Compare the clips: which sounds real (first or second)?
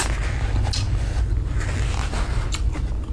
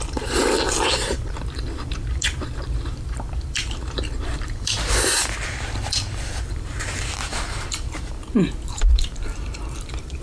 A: first